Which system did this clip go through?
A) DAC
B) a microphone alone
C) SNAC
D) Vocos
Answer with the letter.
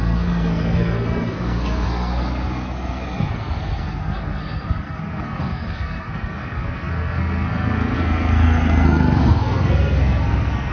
C